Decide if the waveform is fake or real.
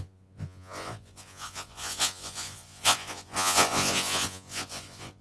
fake